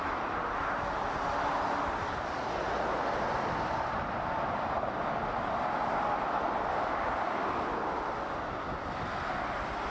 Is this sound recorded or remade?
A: recorded